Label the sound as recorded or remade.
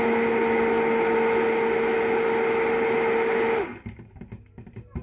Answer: recorded